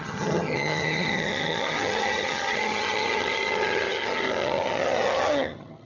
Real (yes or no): no